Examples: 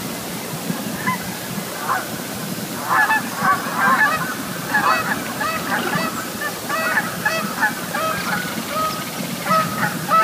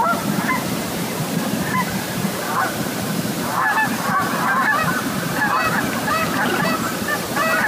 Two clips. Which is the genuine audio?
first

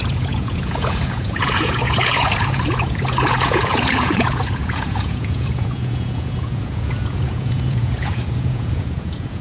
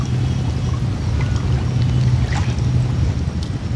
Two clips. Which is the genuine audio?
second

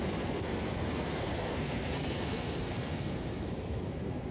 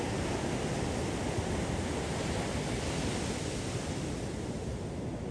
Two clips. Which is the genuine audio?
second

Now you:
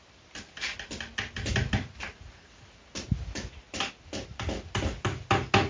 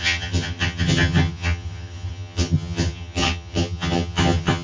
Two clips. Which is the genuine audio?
first